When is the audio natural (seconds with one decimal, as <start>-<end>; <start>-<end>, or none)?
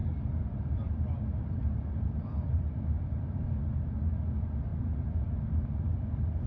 3.5-6.5